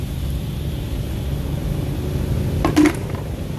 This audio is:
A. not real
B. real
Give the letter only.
B